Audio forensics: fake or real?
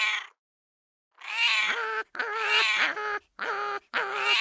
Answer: real